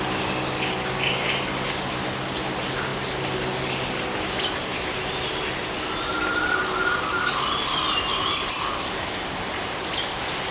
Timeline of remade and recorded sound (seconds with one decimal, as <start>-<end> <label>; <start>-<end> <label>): 0.0-10.5 recorded